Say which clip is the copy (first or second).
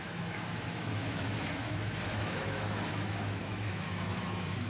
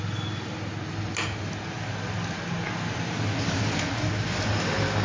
first